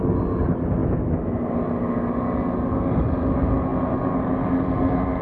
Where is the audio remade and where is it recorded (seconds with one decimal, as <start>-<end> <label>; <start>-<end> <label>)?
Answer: 0.0-5.2 recorded